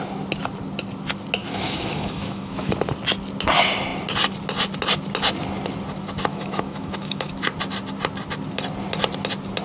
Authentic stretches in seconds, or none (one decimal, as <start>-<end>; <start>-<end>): 0.0-1.4; 2.7-6.3; 7.3-9.6